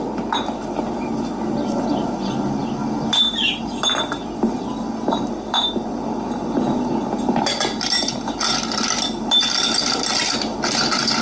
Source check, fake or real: real